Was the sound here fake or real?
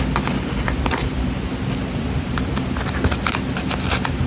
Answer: real